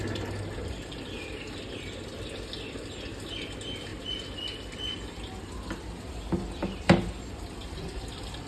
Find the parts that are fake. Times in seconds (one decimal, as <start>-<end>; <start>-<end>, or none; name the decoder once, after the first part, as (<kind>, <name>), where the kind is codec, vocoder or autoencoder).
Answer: none